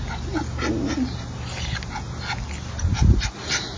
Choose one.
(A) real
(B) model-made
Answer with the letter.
A